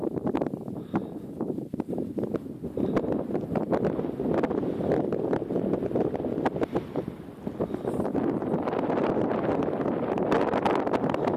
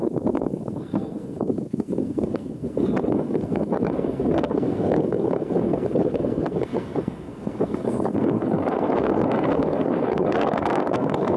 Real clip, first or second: first